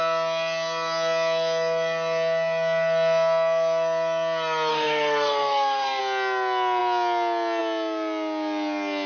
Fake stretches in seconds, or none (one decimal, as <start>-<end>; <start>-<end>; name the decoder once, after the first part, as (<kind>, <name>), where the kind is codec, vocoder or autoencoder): 4.7-6.0 (codec, SNAC)